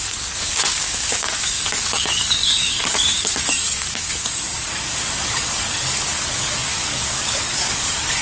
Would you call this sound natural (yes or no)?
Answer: no